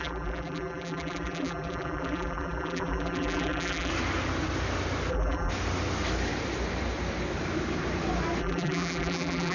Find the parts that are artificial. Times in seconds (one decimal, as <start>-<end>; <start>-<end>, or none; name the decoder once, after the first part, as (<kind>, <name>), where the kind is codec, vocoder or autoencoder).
0.0-3.9 (vocoder, BigVGAN v2); 5.1-5.5; 8.4-9.5